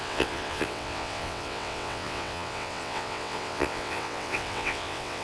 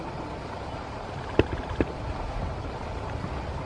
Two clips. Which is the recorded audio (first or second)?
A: second